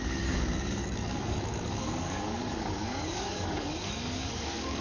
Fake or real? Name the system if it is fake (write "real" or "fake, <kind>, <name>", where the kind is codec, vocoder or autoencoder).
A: fake, codec, DAC